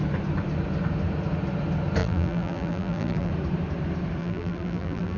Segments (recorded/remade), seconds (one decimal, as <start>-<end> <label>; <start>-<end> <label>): 0.0-2.0 recorded; 2.0-3.3 remade; 3.3-4.2 recorded; 4.2-5.2 remade